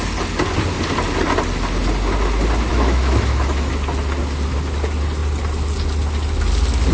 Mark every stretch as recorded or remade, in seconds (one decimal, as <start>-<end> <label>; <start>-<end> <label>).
0.0-2.7 recorded; 2.7-3.7 remade; 3.7-6.9 recorded